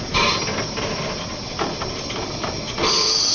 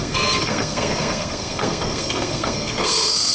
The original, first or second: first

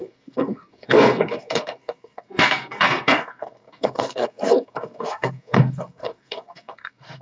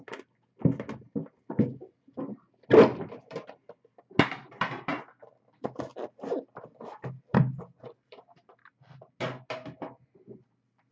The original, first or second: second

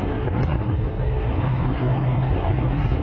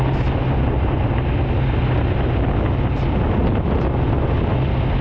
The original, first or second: second